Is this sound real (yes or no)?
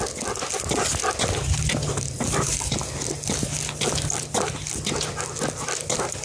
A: yes